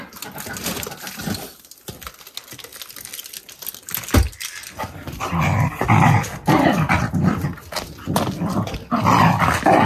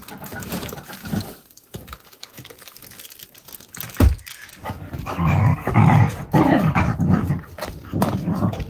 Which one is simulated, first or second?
second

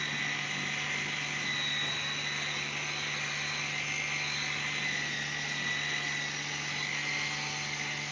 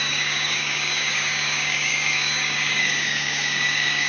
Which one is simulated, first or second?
second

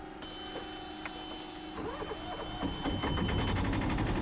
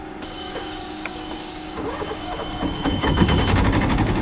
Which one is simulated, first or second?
second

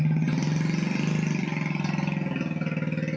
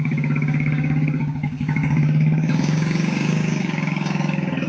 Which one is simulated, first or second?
second